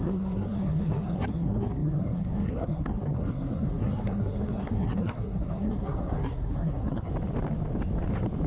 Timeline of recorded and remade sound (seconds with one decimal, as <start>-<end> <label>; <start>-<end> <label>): 0.0-7.1 remade; 7.1-8.5 recorded